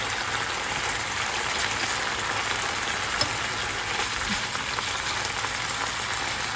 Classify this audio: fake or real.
real